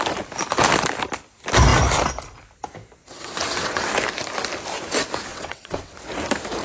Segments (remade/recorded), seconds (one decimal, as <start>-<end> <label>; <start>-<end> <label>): 0.0-3.0 recorded; 3.0-3.9 remade; 3.9-5.3 recorded; 5.3-6.0 remade; 6.0-6.6 recorded